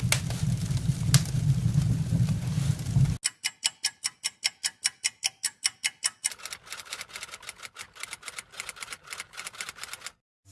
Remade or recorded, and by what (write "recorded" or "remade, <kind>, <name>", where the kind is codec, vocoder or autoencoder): recorded